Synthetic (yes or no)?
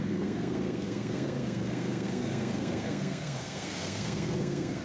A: yes